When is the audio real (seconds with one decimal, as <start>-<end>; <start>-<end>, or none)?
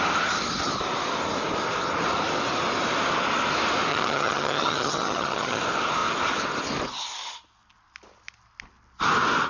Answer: 0.0-3.9; 5.6-9.5